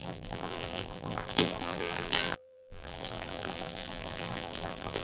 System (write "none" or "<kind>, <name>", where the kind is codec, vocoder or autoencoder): vocoder, BigVGAN v2